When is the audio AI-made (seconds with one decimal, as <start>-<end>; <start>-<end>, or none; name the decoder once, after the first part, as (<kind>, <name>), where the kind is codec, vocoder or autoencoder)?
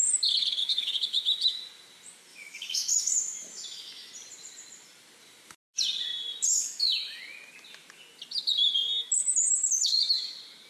0.6-1.6 (autoencoder, DAC-VAE); 2.3-4.1; 6.5-7.2